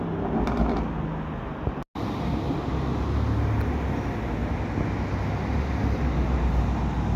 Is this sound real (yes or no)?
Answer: yes